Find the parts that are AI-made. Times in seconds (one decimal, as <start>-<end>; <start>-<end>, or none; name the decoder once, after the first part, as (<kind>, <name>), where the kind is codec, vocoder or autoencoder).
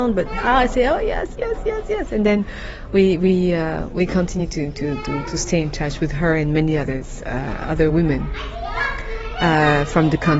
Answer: 3.3-4.4 (autoencoder, DAC-VAE); 5.3-7.9